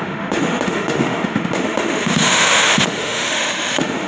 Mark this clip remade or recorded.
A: remade